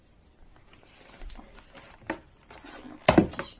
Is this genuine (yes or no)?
yes